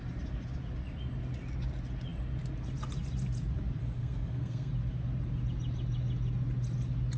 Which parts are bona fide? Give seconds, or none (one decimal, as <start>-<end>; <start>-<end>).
0.0-3.8; 4.7-7.2